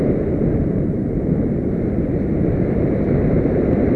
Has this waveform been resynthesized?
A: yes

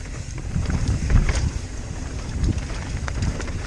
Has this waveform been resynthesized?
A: yes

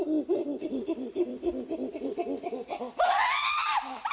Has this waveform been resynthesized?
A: yes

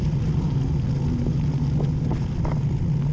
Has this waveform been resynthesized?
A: no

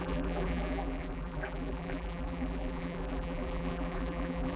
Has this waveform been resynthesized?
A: yes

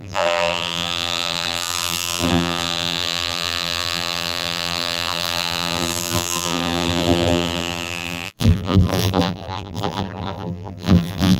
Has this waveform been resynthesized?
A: yes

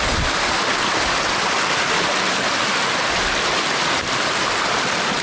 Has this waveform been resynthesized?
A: no